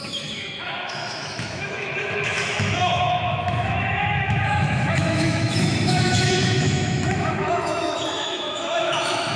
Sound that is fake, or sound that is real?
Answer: fake